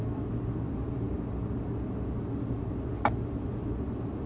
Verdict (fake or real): real